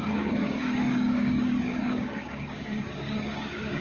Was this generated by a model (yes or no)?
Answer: yes